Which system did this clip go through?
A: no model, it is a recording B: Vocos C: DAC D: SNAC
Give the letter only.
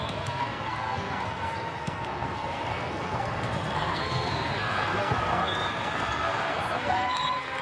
D